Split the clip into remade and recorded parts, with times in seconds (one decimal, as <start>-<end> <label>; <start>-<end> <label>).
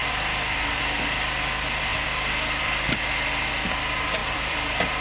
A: 0.0-0.8 remade; 0.8-1.9 recorded; 1.9-3.5 remade; 3.5-4.2 recorded; 4.2-5.0 remade